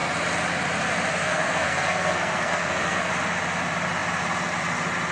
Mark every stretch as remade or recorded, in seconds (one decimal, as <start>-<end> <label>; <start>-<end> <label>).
0.0-1.1 recorded; 1.1-3.1 remade; 3.1-5.1 recorded